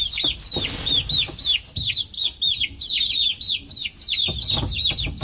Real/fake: real